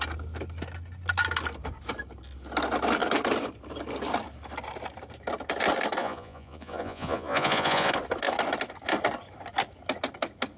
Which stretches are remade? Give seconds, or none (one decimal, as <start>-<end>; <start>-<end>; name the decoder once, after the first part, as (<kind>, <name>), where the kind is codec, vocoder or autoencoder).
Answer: 6.0-7.9 (vocoder, Vocos)